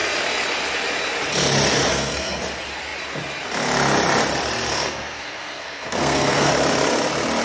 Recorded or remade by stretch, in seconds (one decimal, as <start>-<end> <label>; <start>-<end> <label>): 0.0-1.9 recorded; 1.9-2.4 remade; 2.4-4.7 recorded; 4.7-6.5 remade; 6.5-7.4 recorded